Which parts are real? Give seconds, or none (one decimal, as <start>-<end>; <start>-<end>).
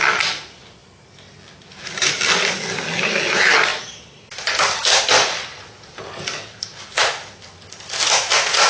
0.0-8.7